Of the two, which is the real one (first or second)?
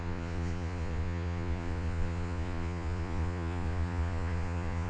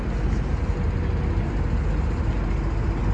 second